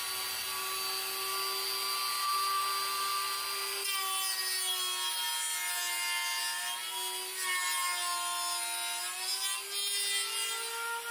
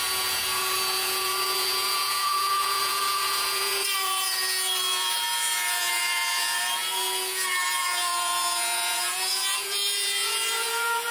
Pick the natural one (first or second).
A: first